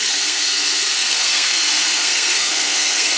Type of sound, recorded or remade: remade